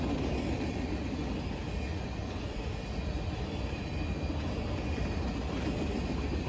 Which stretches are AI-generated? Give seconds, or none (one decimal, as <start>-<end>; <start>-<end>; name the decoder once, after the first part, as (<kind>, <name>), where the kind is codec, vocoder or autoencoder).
1.9-2.6 (vocoder, Vocos)